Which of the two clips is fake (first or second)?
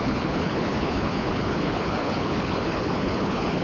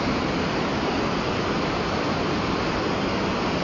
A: first